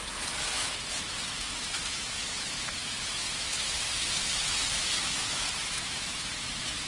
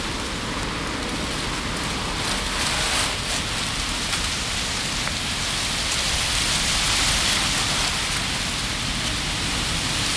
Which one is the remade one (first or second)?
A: first